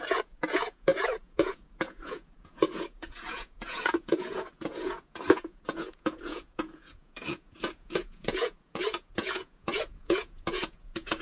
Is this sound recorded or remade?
remade